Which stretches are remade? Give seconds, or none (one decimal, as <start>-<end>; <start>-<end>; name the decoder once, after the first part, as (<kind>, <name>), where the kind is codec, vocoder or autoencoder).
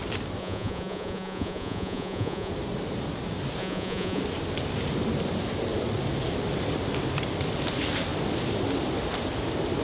0.4-2.5 (vocoder, Vocos); 3.6-4.2